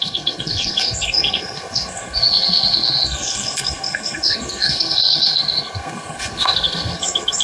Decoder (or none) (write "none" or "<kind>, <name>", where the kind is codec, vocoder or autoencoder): codec, SNAC